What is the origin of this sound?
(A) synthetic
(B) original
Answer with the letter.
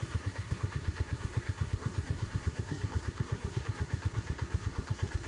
A